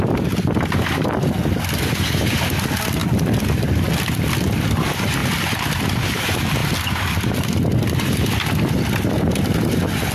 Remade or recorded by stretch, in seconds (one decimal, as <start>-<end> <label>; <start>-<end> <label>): 0.0-3.0 recorded; 3.0-3.9 remade; 3.9-5.2 recorded; 5.2-5.9 remade; 5.9-6.6 recorded; 6.6-8.9 remade; 8.9-10.1 recorded